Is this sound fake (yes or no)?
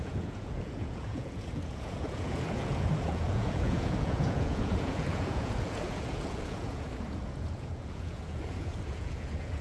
yes